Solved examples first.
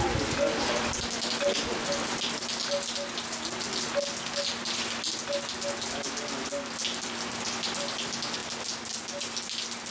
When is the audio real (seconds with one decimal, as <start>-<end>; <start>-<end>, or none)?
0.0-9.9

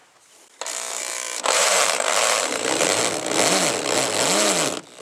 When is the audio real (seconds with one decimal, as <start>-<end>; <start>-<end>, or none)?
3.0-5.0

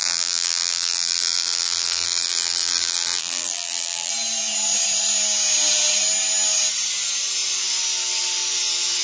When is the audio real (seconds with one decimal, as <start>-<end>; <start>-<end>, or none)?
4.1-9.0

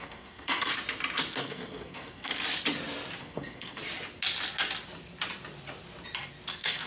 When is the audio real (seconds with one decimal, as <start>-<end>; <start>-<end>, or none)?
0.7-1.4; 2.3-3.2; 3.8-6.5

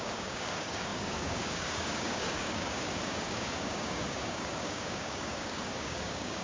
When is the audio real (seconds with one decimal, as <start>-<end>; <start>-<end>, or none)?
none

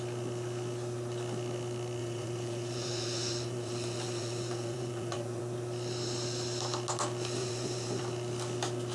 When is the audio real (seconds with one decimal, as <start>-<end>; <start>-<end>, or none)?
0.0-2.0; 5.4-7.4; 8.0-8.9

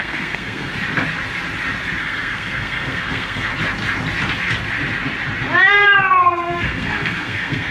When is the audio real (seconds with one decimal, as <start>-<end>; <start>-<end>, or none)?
0.7-2.0; 3.5-5.7

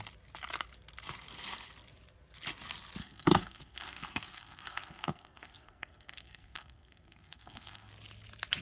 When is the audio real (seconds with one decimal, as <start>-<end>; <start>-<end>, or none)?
0.0-3.0; 7.9-8.6